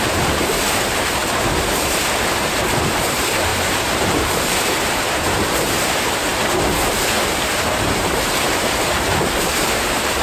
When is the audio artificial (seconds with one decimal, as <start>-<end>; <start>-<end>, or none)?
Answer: 0.0-1.2; 2.2-10.2